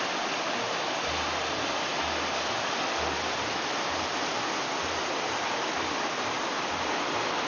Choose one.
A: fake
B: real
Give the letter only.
B